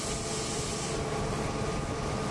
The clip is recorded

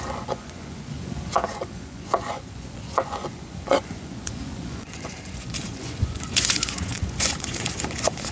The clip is remade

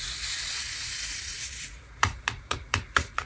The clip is remade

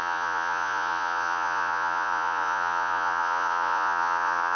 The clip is remade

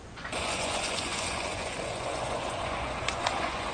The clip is remade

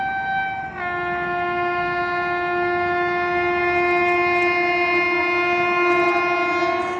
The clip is recorded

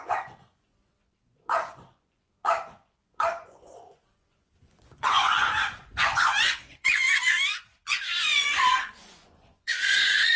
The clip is remade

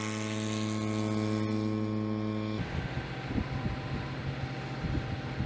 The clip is recorded